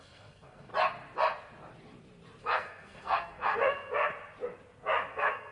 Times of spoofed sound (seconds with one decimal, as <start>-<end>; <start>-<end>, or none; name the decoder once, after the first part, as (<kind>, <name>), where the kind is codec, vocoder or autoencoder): 0.0-0.7 (codec, SNAC); 2.4-4.1; 5.1-5.5